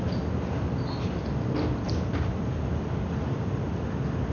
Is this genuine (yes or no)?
yes